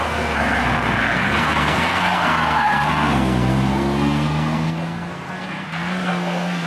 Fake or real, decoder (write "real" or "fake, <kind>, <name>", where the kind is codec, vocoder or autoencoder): fake, codec, SNAC